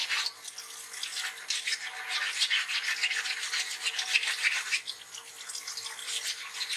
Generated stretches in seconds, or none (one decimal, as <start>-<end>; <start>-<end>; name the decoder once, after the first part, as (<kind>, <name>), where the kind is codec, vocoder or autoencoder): none